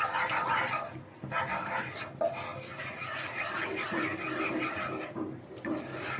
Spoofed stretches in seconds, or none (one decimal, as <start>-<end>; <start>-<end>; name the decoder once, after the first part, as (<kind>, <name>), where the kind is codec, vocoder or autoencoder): none